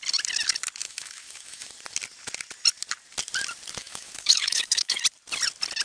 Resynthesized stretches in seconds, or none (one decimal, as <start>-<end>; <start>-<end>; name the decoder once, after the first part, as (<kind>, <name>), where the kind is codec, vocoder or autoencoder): 0.8-1.7 (autoencoder, DAC-VAE); 3.8-5.0